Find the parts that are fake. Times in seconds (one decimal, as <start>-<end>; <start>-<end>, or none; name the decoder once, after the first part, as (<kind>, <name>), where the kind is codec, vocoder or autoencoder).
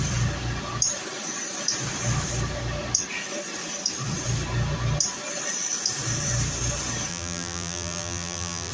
7.1-8.7 (vocoder, BigVGAN v2)